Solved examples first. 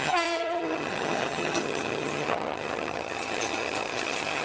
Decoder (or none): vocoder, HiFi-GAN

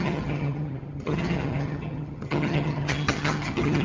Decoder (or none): vocoder, HiFi-GAN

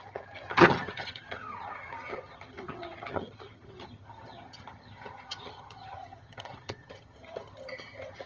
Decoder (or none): vocoder, HiFi-GAN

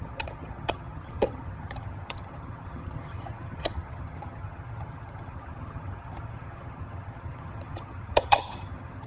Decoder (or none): vocoder, HiFi-GAN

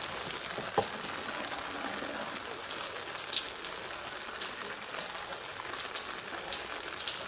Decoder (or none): none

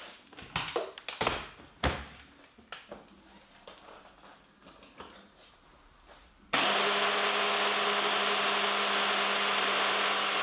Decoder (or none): none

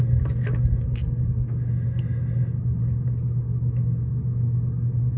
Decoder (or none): none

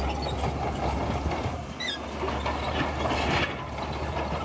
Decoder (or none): none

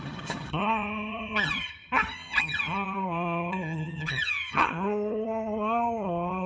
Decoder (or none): vocoder, HiFi-GAN